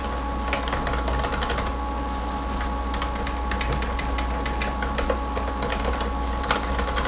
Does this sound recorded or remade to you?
recorded